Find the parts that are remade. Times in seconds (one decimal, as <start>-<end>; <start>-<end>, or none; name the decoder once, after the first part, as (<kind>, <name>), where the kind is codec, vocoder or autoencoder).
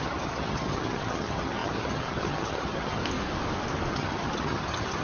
0.0-3.0 (vocoder, HiFi-GAN); 3.9-5.0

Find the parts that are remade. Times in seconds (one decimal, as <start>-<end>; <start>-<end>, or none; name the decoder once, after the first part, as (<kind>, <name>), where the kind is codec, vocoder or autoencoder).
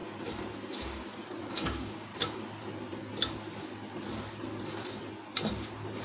1.5-2.1 (codec, DAC)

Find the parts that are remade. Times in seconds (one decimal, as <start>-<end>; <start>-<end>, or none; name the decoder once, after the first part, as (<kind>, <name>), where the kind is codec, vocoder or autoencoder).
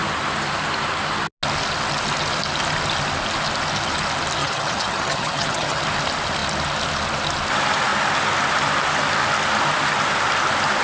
4.4-5.8 (vocoder, HiFi-GAN)